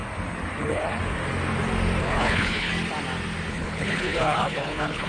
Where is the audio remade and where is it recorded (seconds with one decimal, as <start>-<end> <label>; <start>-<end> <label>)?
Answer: 0.0-0.6 recorded; 0.6-1.0 remade; 1.0-2.0 recorded; 2.0-2.7 remade; 2.7-3.5 recorded; 3.5-5.1 remade